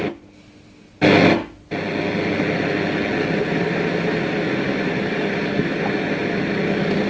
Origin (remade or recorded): recorded